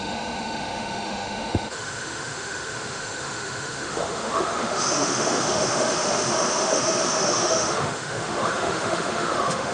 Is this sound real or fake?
fake